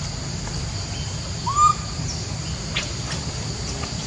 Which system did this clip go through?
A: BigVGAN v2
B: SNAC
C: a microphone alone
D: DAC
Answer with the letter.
C